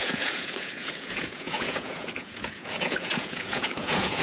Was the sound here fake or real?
fake